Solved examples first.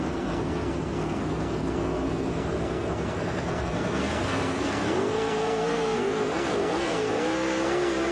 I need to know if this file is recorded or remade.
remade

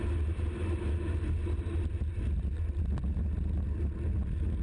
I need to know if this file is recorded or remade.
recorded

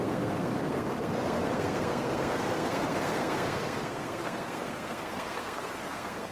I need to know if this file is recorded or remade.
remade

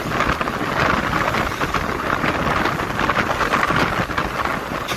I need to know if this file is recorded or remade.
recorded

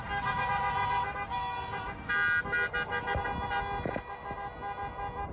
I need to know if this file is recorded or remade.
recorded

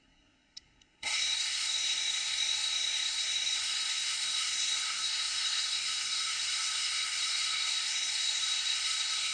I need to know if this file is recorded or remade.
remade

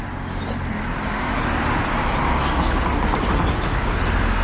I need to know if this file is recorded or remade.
recorded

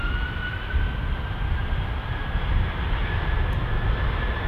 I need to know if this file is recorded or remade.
recorded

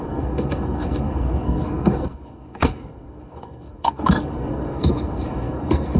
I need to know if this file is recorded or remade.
remade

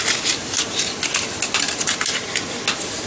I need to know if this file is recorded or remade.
recorded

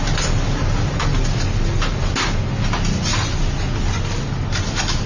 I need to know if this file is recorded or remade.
recorded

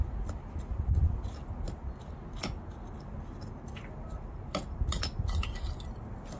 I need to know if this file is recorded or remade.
recorded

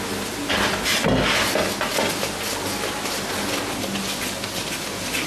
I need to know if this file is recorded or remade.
recorded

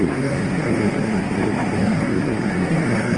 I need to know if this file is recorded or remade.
remade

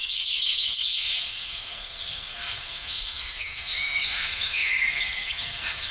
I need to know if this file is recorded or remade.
remade